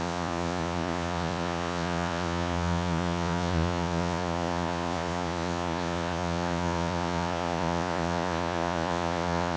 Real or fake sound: fake